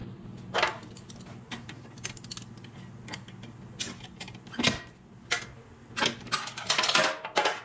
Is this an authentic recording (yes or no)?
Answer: yes